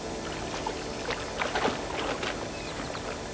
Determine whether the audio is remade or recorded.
recorded